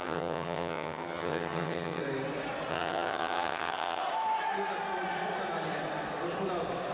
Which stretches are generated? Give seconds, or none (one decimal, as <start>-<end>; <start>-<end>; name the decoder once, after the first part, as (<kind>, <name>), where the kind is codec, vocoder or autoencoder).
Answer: 0.0-2.0 (vocoder, HiFi-GAN); 2.7-4.0